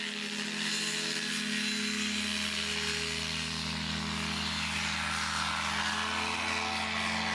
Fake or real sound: real